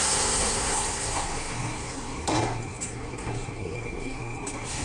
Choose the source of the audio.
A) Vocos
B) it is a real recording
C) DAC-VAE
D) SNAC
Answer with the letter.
D